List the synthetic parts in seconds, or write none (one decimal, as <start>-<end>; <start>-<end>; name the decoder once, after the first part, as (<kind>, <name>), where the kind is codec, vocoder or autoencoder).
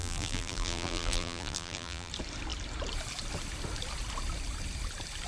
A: 0.0-2.1 (vocoder, BigVGAN v2)